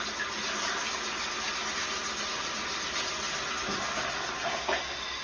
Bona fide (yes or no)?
yes